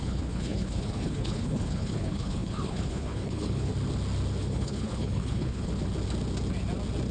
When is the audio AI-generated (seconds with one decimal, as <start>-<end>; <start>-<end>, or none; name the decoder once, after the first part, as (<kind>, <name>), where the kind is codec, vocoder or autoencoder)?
0.0-3.7 (codec, HILCodec); 4.4-5.7

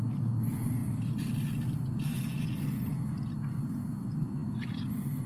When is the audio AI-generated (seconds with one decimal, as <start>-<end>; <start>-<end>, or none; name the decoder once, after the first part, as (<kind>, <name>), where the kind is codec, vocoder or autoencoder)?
0.0-0.8 (vocoder, BigVGAN v2); 4.0-5.3

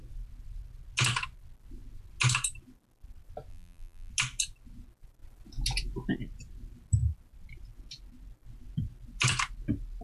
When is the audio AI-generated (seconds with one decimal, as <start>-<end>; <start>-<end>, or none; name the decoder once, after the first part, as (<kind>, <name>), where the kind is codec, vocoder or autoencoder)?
3.5-4.1 (vocoder, BigVGAN v2)

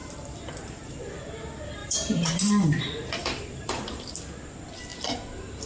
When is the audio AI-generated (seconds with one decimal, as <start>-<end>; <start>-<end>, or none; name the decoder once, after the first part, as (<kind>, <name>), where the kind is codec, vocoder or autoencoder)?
0.0-1.2 (vocoder, BigVGAN v2); 1.8-2.8; 3.2-4.1

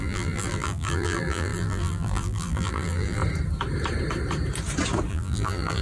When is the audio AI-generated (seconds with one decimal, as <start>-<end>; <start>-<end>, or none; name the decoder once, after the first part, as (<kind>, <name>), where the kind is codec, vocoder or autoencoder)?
0.0-3.2 (vocoder, BigVGAN v2); 5.1-5.8

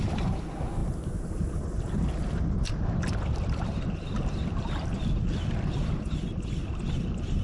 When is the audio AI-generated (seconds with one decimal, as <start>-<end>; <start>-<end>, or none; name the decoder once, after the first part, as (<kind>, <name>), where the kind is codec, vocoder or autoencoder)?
none

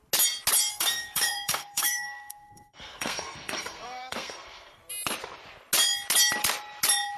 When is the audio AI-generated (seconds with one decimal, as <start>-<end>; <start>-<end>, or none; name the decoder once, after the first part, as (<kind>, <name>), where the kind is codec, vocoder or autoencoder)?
0.7-4.8 (codec, SNAC)

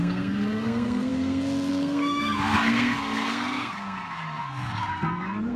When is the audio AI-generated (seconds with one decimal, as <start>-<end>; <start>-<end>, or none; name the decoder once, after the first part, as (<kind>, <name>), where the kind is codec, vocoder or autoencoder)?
0.0-5.6 (codec, SNAC)